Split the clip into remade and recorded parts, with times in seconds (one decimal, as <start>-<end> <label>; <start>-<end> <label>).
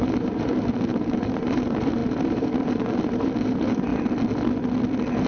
0.0-3.9 remade; 3.9-5.3 recorded